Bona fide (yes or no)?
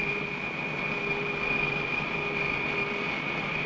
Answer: yes